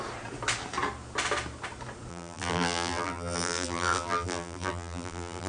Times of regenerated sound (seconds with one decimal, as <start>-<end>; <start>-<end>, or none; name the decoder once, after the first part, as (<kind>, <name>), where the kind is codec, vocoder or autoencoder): 2.1-5.5 (vocoder, BigVGAN v2)